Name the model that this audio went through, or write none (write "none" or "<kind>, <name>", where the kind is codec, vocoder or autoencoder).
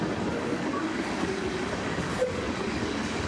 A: codec, DAC